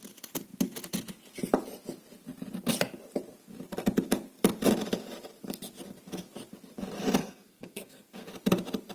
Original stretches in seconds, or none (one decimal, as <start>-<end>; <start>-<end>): 0.0-7.2; 8.3-8.9